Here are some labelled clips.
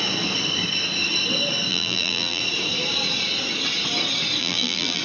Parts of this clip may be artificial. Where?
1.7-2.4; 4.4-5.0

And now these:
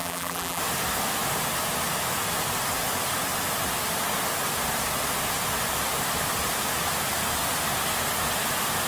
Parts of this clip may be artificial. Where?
0.0-0.6